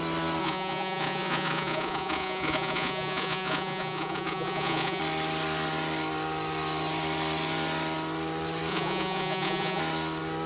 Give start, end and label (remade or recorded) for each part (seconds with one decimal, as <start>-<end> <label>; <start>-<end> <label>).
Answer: 0.0-0.4 recorded; 0.4-5.0 remade; 5.0-8.7 recorded; 8.7-9.8 remade; 9.8-10.5 recorded